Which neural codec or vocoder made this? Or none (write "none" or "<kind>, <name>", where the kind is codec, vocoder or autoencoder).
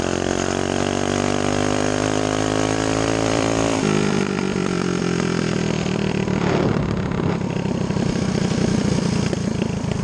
vocoder, BigVGAN v2